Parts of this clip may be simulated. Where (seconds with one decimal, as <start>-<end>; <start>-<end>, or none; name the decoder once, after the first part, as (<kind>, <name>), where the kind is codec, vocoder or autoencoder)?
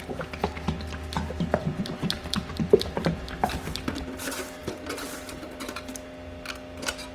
1.7-3.0 (vocoder, BigVGAN v2)